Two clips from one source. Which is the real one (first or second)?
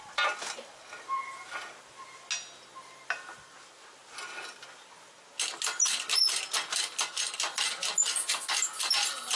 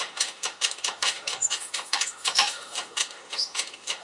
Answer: first